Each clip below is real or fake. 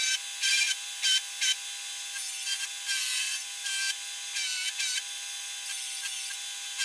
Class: real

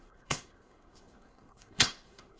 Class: fake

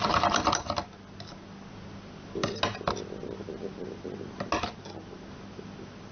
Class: real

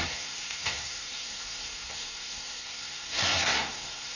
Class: fake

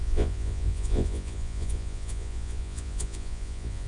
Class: fake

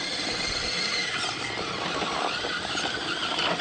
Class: real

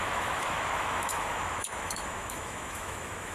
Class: fake